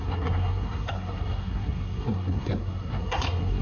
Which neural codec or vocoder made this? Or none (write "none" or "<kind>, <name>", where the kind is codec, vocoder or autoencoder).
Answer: codec, SNAC